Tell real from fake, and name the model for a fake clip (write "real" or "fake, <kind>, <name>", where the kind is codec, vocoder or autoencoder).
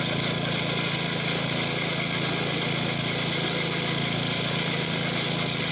real